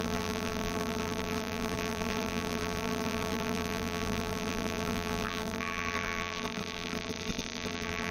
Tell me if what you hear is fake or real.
fake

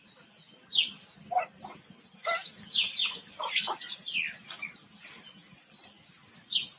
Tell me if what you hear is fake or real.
real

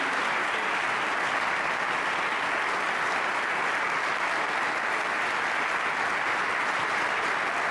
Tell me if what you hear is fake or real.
real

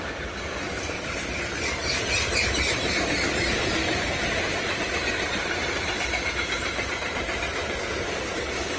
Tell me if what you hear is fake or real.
fake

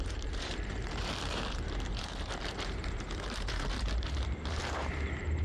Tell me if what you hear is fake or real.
fake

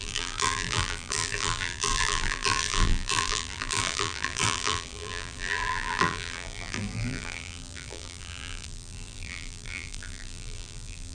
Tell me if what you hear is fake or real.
fake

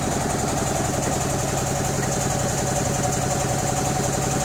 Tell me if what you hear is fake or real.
real